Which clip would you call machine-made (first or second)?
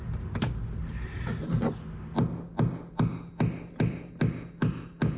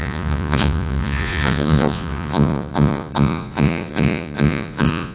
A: second